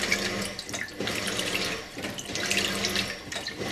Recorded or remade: recorded